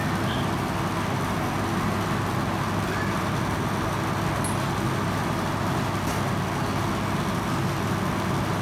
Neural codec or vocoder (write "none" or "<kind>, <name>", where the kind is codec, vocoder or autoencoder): none